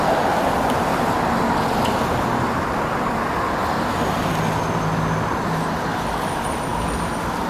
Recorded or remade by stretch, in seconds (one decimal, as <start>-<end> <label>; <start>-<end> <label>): 0.0-7.5 recorded

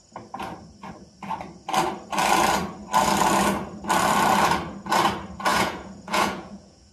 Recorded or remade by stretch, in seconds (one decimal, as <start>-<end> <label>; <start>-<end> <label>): 0.0-5.5 recorded; 5.5-6.9 remade

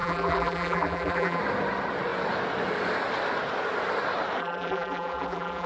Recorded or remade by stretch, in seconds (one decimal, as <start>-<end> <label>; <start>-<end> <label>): 0.0-1.4 remade; 1.4-4.4 recorded; 4.4-5.7 remade

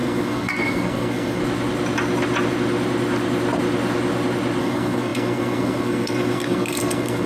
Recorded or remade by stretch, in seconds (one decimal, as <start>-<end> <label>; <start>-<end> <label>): 0.0-1.4 remade; 1.4-4.6 recorded; 4.6-7.3 remade

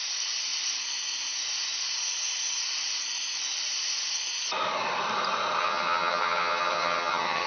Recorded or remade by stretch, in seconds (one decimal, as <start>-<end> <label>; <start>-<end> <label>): 0.0-5.6 recorded; 5.6-7.5 remade

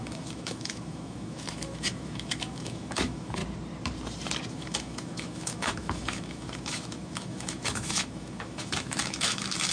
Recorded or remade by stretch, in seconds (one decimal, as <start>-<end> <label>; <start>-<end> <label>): 0.0-3.4 remade; 3.4-4.5 recorded; 4.5-9.7 remade

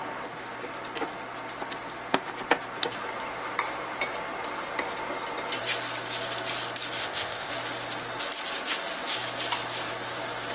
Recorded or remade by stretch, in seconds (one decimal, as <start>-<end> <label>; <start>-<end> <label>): 0.0-7.0 recorded; 7.0-7.5 remade; 7.5-10.5 recorded